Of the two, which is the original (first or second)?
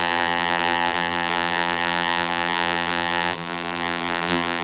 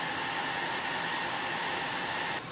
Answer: second